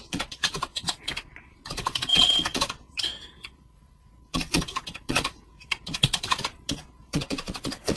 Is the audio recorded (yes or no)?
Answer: no